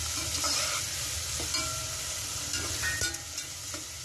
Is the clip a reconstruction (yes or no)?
no